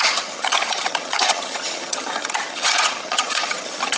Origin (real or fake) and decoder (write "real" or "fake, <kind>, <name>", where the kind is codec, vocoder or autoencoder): fake, vocoder, HiFi-GAN